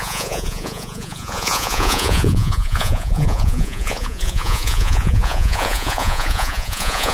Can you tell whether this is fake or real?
fake